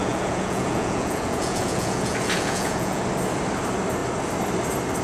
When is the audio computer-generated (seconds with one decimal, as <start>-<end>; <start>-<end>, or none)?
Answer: 0.0-3.0